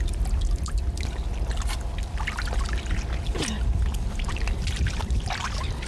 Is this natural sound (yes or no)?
yes